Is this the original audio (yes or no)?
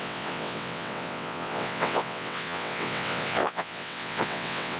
no